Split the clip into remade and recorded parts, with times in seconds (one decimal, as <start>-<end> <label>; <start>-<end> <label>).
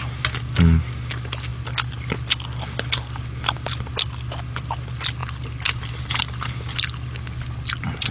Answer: 0.0-8.1 recorded